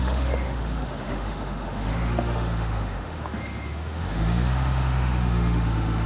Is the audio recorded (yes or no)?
no